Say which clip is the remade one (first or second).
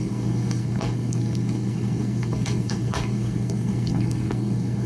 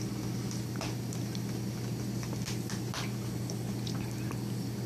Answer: first